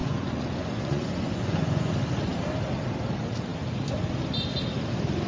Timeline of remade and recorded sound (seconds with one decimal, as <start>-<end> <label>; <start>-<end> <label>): 0.0-1.9 remade; 1.9-5.3 recorded